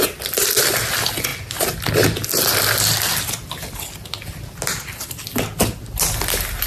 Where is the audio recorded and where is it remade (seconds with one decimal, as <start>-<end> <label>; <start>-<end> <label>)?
0.0-6.7 recorded